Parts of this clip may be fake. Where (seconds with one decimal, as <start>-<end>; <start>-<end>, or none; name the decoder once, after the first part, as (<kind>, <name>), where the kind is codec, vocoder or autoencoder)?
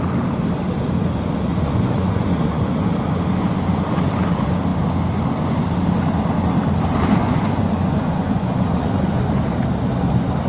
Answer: 1.5-2.9 (vocoder, Vocos); 7.2-9.2